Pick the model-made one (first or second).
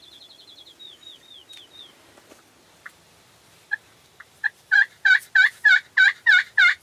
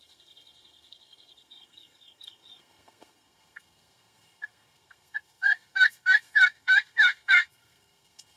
second